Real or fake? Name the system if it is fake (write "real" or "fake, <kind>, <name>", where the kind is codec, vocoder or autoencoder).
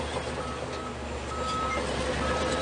real